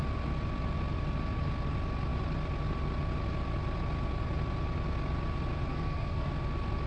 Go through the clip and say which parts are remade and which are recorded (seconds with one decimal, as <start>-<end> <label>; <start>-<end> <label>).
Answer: 0.0-5.7 recorded; 5.7-6.3 remade; 6.3-6.9 recorded